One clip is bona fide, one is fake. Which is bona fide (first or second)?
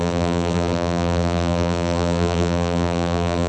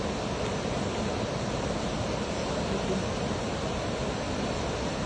second